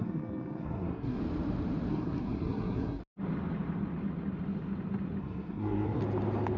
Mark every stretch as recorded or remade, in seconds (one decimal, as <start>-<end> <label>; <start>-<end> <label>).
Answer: 0.0-1.2 remade; 1.2-1.9 recorded; 1.9-3.0 remade; 3.0-5.2 recorded; 5.2-6.0 remade; 6.0-6.6 recorded